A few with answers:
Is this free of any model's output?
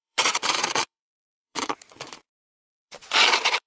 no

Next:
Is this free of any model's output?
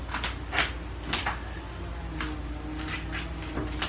yes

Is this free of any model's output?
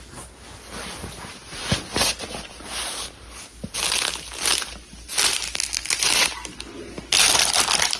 yes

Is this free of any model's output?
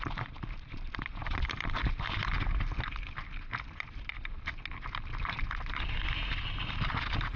yes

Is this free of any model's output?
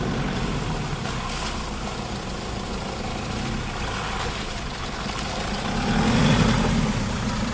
yes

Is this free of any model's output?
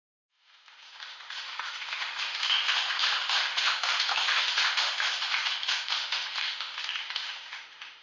no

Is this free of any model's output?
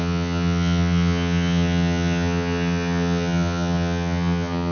no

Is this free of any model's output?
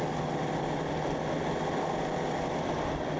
yes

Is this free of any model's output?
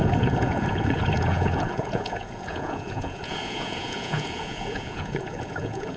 no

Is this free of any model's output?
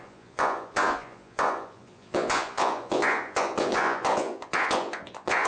no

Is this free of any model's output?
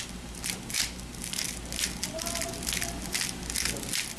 yes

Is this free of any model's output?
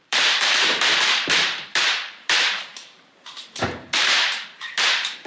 no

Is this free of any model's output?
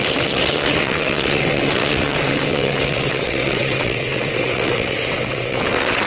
no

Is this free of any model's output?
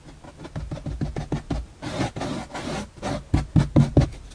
yes